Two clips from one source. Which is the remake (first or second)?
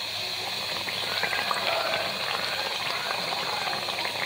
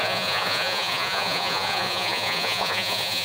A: second